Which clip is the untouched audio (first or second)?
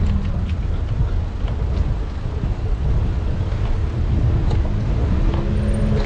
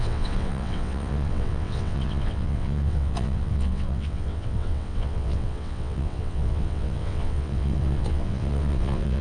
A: first